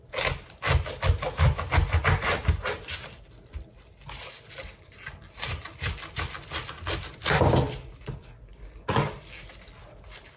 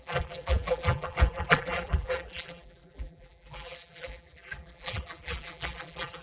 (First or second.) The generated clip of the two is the second